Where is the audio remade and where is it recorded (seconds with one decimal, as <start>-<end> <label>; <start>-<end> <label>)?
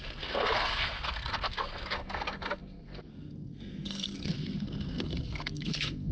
0.0-6.1 remade